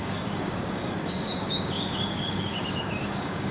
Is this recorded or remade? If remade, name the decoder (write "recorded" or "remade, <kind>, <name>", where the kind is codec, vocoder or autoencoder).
remade, codec, DAC